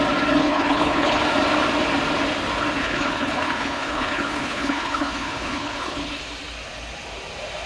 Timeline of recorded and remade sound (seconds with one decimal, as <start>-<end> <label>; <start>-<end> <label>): 0.0-0.4 recorded; 0.4-1.2 remade; 1.2-2.8 recorded; 2.8-6.2 remade; 6.2-7.7 recorded